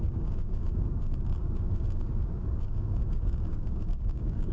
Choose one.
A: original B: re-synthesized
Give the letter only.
B